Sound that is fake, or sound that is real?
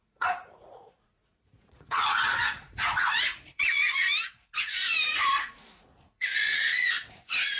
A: fake